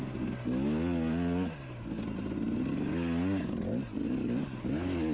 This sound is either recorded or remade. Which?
recorded